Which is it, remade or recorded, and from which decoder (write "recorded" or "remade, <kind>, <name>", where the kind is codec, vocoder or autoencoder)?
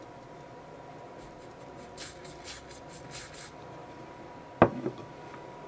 recorded